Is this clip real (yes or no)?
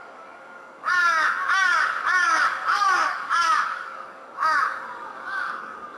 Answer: no